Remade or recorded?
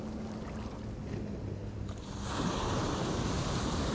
recorded